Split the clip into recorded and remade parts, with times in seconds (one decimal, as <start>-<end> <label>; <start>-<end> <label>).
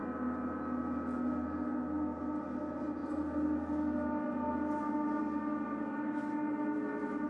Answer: 0.0-7.3 recorded